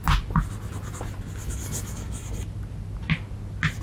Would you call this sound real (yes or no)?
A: yes